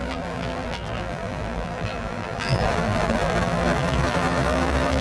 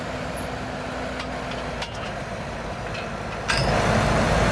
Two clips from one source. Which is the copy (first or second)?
first